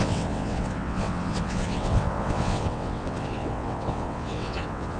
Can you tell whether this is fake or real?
fake